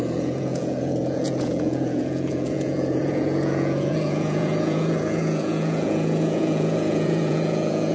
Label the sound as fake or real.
fake